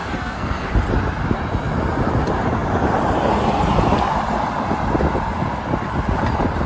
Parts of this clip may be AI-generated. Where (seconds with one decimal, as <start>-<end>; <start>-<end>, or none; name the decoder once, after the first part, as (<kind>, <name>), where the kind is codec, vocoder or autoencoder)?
0.0-0.7 (codec, SNAC)